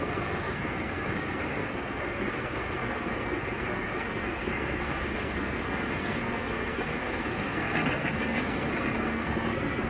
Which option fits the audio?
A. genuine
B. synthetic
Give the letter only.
B